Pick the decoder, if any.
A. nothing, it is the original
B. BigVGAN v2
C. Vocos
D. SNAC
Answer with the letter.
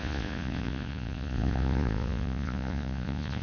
C